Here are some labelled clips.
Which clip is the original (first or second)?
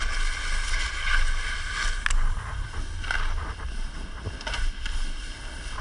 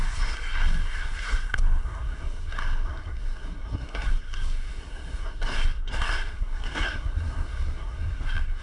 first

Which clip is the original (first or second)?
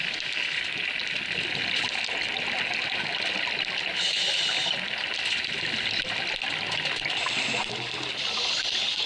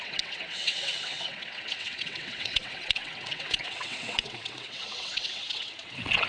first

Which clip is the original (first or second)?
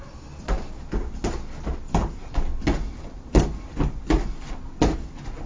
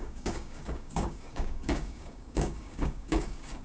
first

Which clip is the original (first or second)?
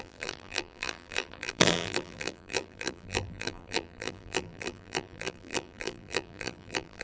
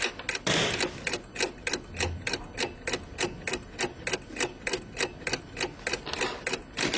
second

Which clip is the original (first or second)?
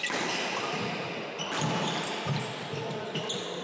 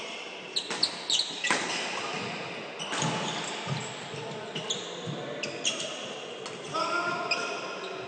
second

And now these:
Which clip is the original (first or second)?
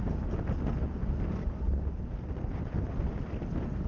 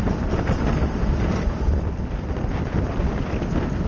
first